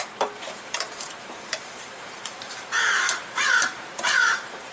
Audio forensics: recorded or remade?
remade